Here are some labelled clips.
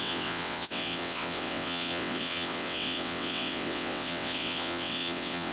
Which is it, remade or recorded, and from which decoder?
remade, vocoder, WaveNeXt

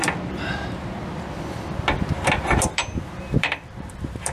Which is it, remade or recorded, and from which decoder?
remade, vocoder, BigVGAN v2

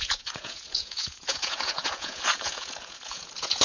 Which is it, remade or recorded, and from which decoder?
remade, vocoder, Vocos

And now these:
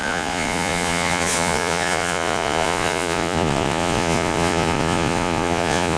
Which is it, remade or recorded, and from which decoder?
remade, vocoder, Vocos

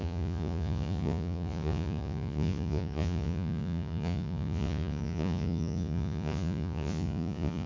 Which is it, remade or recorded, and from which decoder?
remade, vocoder, Vocos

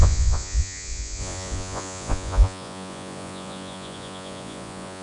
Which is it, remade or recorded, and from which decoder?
remade, vocoder, Vocos